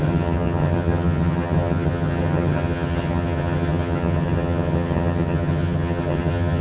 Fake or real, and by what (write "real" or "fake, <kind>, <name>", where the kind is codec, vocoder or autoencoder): fake, vocoder, HiFi-GAN